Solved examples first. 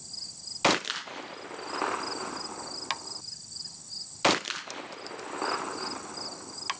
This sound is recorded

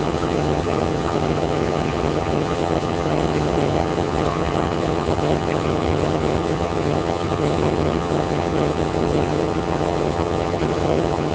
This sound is remade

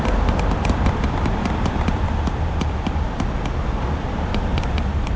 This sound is recorded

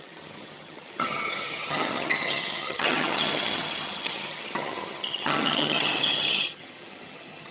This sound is remade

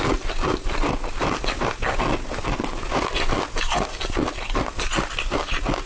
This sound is recorded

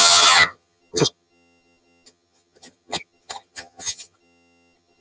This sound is remade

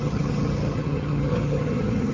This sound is remade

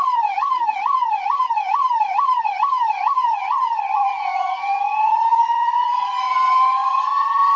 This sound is remade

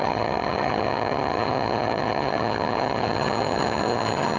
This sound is remade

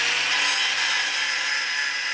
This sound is recorded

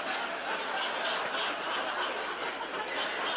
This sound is recorded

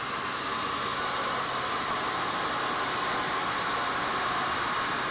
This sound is recorded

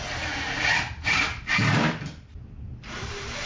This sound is recorded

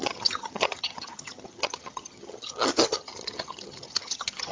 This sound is remade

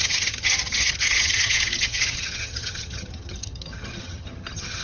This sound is remade